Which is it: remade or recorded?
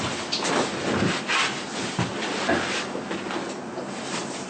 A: recorded